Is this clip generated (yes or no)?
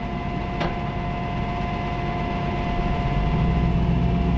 no